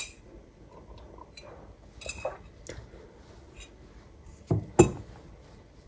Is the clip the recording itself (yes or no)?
yes